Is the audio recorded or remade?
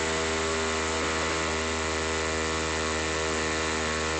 recorded